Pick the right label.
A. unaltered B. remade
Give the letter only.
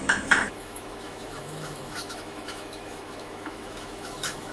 B